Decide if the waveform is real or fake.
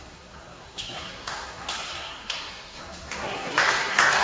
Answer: fake